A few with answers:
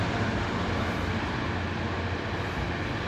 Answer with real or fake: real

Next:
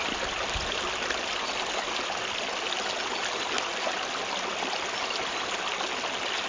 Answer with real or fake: real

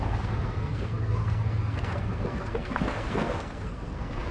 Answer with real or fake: fake